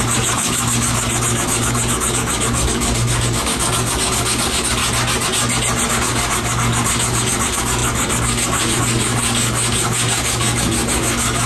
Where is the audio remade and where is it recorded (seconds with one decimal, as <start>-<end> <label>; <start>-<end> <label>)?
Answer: 0.0-4.8 remade; 4.8-5.9 recorded; 5.9-11.5 remade